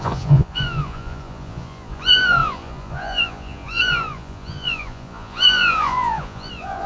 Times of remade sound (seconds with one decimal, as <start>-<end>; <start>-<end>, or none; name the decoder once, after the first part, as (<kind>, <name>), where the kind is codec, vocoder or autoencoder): 0.0-6.9 (vocoder, Vocos)